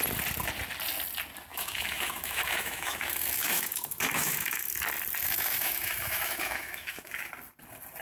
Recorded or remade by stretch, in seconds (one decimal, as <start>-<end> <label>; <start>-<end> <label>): 0.0-1.5 recorded; 1.5-4.7 remade; 4.7-5.2 recorded; 5.2-7.3 remade; 7.3-8.0 recorded